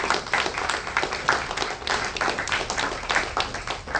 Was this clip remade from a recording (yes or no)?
no